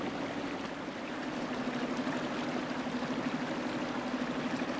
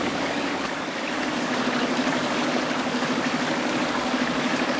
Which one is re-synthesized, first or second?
second